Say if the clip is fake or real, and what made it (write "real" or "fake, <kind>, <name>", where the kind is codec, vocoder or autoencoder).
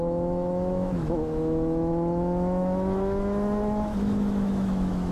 fake, autoencoder, DAC-VAE